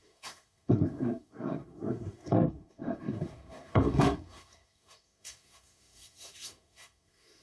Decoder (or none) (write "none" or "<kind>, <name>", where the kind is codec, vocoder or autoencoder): codec, SNAC